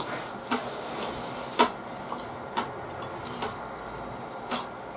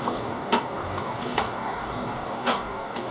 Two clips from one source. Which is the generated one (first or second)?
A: second